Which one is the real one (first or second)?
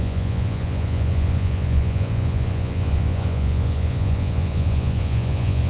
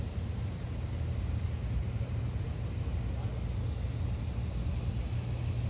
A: second